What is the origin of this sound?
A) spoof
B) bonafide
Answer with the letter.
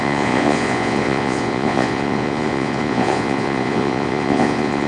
A